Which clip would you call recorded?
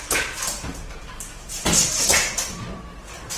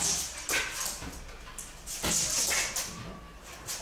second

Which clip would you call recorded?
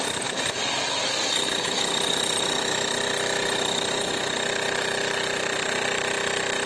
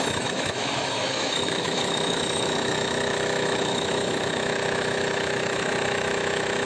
first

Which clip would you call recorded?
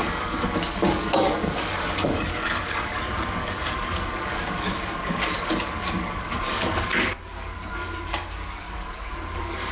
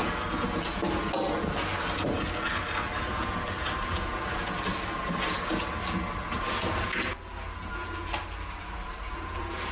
second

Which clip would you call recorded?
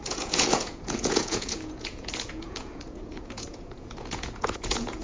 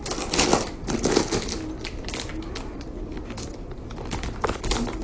second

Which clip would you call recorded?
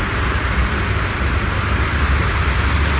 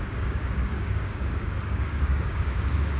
first